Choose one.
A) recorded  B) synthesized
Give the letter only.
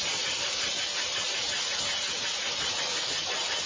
A